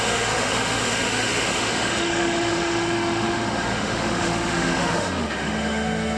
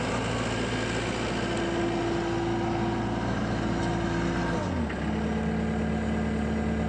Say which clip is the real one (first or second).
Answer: second